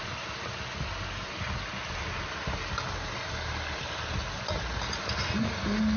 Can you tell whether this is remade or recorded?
recorded